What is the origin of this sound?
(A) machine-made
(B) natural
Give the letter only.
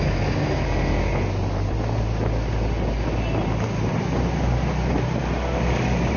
B